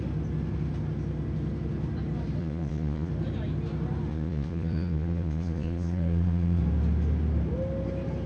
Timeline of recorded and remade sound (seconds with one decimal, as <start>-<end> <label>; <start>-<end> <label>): 0.0-2.4 recorded; 2.4-3.1 remade; 3.1-4.1 recorded; 4.1-6.6 remade; 6.6-8.3 recorded

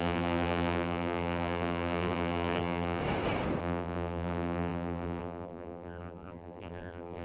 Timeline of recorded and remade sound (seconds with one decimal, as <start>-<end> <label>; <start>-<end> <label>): 0.0-3.0 remade; 3.0-3.6 recorded; 3.6-7.2 remade

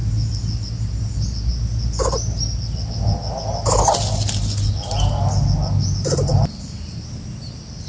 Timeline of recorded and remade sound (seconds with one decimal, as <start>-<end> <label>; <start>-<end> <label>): 0.0-7.9 recorded

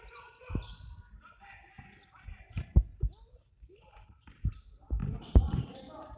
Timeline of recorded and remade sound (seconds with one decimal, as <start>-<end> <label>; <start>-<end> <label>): 0.0-0.4 remade; 0.4-3.9 recorded; 3.9-6.2 remade

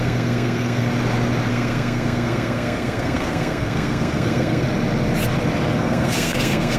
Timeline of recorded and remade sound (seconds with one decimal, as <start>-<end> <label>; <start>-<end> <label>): 0.0-0.9 remade; 0.9-1.5 recorded; 1.5-4.6 remade; 4.6-5.8 recorded; 5.8-6.8 remade

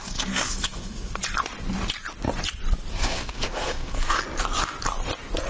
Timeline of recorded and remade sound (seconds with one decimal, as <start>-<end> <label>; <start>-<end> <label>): 0.0-1.2 remade; 1.2-2.9 recorded; 2.9-4.2 remade; 4.2-5.5 recorded

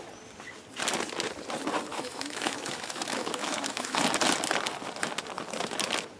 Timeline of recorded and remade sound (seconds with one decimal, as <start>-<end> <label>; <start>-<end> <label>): 0.0-1.9 recorded; 1.9-4.0 remade; 4.0-6.2 recorded